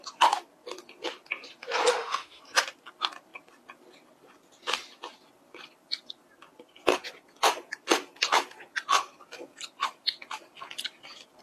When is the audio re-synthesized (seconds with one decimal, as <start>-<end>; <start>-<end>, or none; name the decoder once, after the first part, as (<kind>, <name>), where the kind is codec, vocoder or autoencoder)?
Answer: 1.9-2.4 (autoencoder, DAC-VAE)